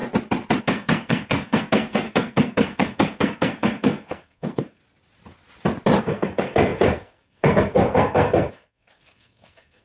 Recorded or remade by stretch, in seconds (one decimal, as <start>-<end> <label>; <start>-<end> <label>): 0.0-0.6 recorded; 0.6-4.8 remade; 4.8-6.0 recorded; 6.0-9.8 remade